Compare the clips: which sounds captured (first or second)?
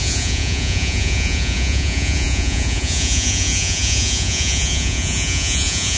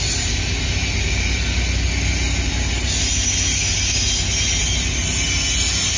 second